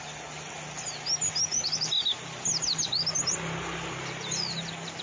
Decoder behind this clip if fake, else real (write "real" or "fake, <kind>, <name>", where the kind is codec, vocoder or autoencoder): real